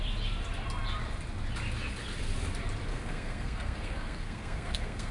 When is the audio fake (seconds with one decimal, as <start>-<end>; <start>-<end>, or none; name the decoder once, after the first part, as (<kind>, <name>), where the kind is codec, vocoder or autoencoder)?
2.9-5.1 (codec, SNAC)